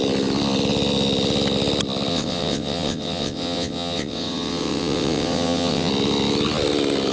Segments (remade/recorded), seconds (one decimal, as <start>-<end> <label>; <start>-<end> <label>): 0.0-2.1 recorded; 2.1-5.9 remade; 5.9-7.1 recorded